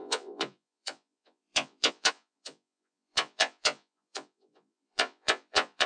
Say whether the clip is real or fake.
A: fake